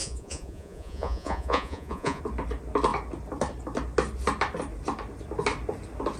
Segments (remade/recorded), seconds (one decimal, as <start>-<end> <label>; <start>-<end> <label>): 0.0-2.2 remade; 2.2-6.2 recorded